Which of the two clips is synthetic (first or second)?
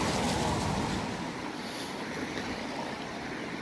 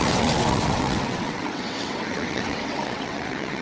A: second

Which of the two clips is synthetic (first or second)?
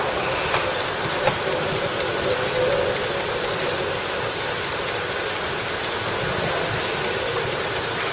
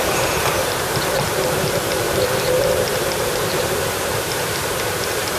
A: second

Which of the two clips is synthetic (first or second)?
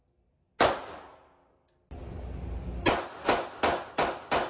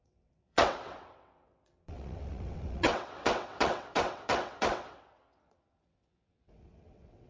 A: second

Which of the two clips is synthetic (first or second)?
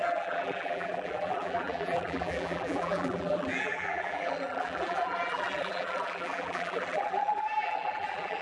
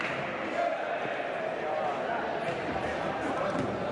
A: first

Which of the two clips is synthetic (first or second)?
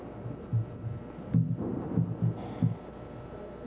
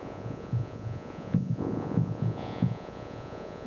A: second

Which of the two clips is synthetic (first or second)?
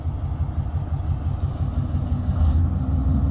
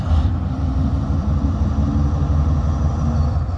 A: second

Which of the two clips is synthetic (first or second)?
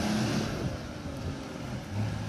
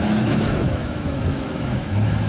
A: second